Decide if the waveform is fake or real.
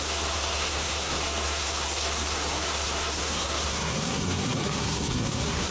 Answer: fake